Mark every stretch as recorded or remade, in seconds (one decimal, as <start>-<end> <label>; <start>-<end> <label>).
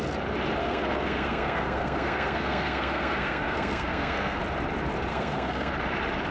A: 0.0-0.6 recorded; 0.6-4.4 remade; 4.4-5.1 recorded; 5.1-5.7 remade; 5.7-6.3 recorded